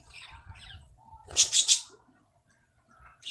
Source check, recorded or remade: remade